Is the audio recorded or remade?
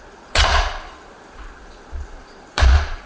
remade